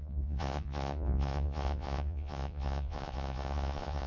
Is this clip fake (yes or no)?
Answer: yes